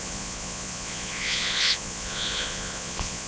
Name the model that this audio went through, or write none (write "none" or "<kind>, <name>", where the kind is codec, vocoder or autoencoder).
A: vocoder, Vocos